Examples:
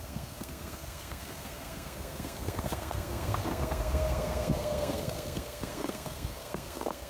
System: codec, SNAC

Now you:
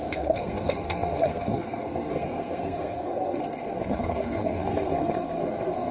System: codec, SNAC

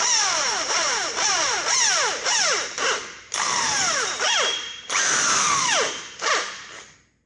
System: vocoder, BigVGAN v2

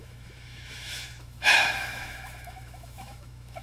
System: autoencoder, DAC-VAE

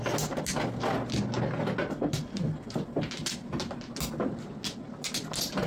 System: none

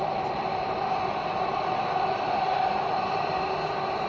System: none